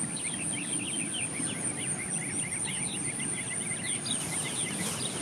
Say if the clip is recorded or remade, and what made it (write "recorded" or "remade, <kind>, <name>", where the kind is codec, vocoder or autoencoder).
recorded